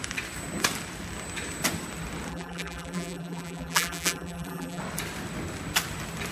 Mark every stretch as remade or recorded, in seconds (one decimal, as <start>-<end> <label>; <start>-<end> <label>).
0.0-2.3 recorded; 2.3-4.8 remade; 4.8-6.3 recorded